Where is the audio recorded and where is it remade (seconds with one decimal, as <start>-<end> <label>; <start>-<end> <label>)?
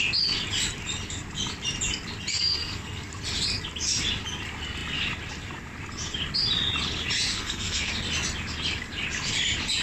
0.0-2.3 recorded; 2.3-3.1 remade; 3.1-7.3 recorded; 7.3-7.9 remade; 7.9-9.8 recorded